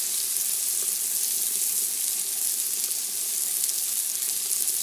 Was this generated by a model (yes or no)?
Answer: no